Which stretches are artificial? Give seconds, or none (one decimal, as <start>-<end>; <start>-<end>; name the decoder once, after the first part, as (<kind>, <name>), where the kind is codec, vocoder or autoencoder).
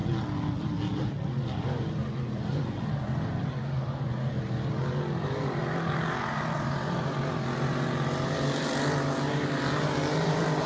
none